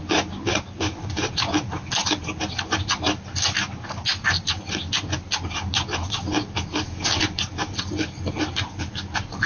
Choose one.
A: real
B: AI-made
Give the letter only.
A